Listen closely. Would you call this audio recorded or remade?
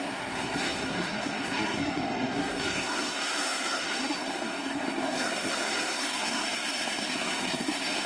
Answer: remade